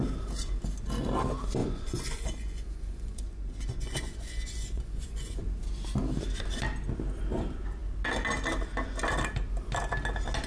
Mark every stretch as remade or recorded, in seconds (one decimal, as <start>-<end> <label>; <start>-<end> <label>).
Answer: 0.0-1.6 recorded; 1.6-5.4 remade; 5.4-10.5 recorded